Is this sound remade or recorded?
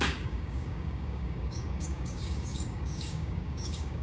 remade